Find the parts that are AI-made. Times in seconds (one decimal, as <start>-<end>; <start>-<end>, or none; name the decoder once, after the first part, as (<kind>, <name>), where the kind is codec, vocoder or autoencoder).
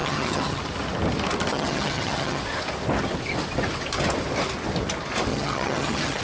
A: 0.0-0.6 (vocoder, HiFi-GAN); 1.5-2.4; 5.3-6.2